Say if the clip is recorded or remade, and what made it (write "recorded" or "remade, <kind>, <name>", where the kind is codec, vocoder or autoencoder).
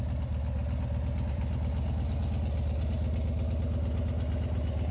recorded